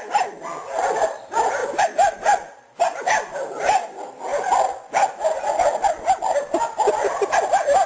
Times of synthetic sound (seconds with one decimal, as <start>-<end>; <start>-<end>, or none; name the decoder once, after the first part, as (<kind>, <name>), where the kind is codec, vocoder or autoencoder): none